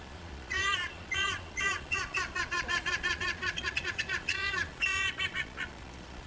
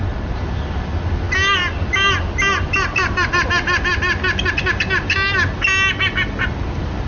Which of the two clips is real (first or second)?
second